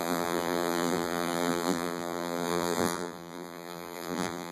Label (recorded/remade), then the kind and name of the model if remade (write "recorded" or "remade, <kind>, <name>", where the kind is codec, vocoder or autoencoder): remade, vocoder, BigVGAN v2